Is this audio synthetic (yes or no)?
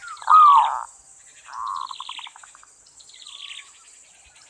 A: no